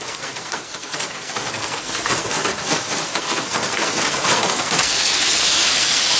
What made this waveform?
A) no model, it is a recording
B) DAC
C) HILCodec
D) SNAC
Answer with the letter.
D